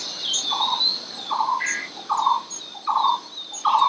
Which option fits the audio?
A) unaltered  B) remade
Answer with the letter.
A